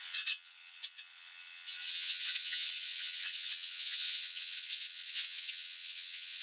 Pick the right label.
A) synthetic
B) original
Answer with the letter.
A